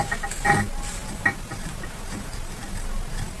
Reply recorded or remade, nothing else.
recorded